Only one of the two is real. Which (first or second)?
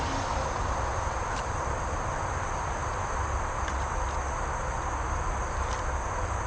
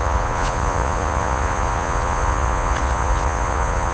first